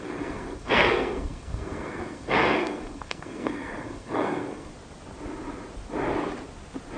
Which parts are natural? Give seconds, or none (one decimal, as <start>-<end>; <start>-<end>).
4.7-7.0